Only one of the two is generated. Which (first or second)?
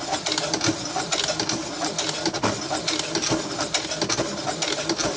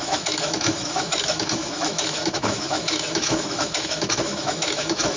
second